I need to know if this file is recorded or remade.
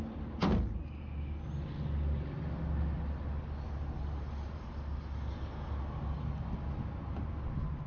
recorded